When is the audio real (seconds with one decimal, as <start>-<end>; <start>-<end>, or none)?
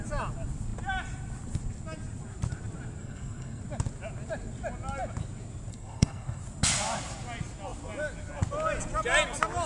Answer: 0.0-3.0; 3.6-5.7; 6.4-9.7